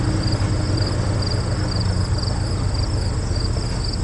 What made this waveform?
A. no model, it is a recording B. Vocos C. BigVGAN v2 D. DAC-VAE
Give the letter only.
A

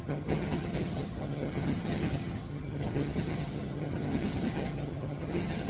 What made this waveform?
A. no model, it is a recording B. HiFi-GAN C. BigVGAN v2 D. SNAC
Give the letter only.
B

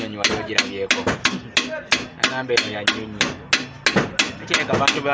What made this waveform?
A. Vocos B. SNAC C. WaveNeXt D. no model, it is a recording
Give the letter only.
D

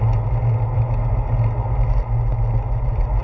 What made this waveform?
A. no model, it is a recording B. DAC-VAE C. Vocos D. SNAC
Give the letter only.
A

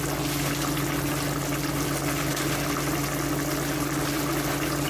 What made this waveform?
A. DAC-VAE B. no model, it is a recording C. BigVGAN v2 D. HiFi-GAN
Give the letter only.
B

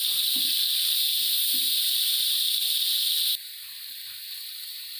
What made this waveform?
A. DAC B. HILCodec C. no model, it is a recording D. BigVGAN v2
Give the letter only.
D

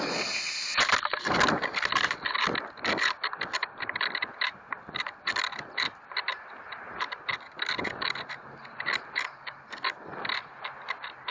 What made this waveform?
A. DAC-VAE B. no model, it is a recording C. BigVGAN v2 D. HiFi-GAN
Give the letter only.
B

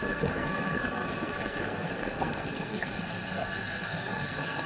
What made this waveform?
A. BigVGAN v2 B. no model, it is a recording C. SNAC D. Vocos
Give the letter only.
C